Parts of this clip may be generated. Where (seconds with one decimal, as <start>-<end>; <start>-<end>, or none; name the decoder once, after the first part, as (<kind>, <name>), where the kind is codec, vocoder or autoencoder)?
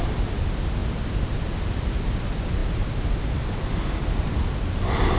none